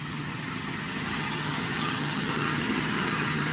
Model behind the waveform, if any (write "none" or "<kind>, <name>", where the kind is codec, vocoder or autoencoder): vocoder, HiFi-GAN